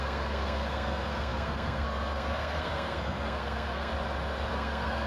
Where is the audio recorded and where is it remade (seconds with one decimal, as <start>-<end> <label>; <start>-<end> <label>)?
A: 0.0-3.9 remade; 3.9-4.5 recorded; 4.5-5.1 remade

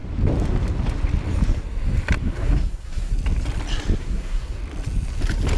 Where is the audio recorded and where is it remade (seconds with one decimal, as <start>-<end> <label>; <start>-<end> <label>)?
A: 0.0-2.2 recorded; 2.2-3.1 remade; 3.1-4.0 recorded; 4.0-4.6 remade; 4.6-5.6 recorded

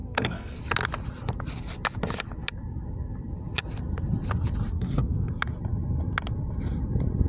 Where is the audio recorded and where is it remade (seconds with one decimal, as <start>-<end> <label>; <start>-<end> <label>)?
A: 0.0-0.6 remade; 0.6-4.7 recorded; 4.7-5.3 remade; 5.3-7.3 recorded